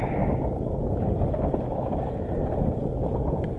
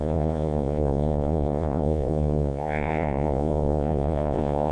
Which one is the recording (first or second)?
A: first